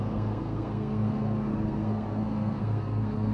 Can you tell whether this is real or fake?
fake